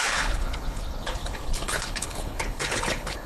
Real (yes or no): no